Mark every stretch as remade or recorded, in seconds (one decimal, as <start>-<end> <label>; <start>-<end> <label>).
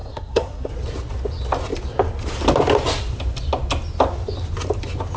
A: 0.0-0.7 remade; 0.7-5.2 recorded